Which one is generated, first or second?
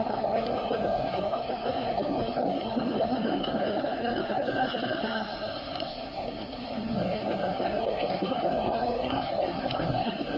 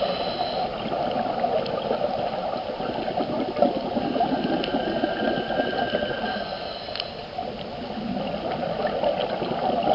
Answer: first